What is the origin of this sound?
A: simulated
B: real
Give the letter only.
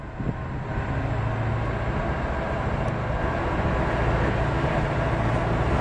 B